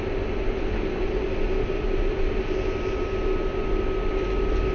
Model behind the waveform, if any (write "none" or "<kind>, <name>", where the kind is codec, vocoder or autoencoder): none